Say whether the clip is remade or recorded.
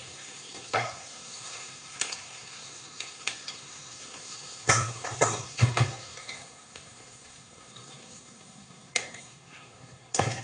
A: remade